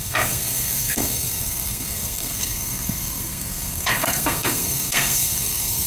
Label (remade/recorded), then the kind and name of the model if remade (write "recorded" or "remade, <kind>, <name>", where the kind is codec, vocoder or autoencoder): remade, codec, SNAC